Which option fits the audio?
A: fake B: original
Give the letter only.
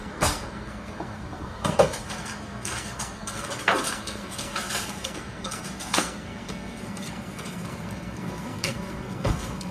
A